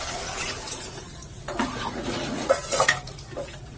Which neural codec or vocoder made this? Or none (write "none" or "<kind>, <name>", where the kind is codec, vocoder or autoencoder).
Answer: vocoder, Vocos